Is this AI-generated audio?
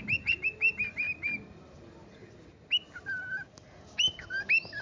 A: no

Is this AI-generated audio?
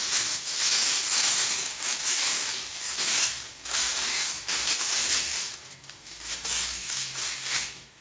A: yes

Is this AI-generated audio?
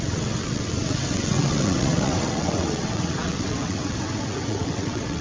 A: yes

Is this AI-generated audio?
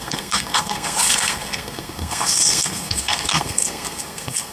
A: yes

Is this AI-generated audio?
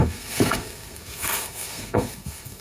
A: yes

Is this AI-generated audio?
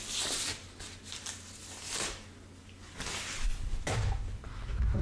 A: no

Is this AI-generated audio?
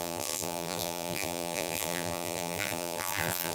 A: yes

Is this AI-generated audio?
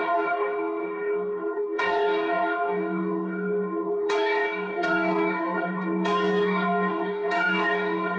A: yes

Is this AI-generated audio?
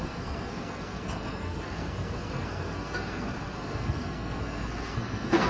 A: yes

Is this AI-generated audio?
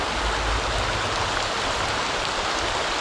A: no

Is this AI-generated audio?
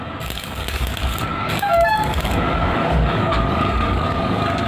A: yes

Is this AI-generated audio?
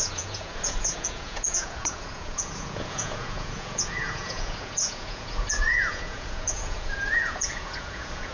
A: yes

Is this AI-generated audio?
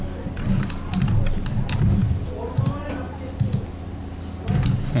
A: no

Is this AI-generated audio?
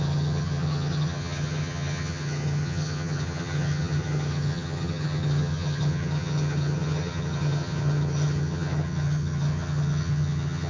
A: yes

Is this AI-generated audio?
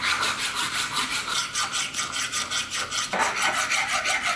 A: yes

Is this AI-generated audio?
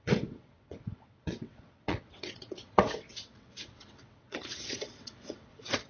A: yes